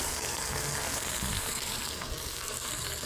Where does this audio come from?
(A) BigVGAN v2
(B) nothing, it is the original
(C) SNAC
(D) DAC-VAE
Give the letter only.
C